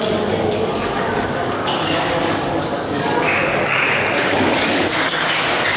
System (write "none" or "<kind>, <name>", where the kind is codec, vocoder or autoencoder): codec, DAC